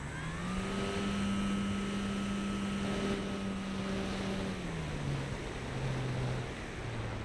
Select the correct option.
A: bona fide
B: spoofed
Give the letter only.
A